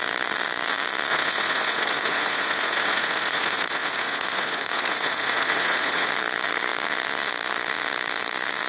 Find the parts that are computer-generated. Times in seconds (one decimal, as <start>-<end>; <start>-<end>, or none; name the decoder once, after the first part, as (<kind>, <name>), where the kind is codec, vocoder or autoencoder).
1.1-6.1 (vocoder, Vocos)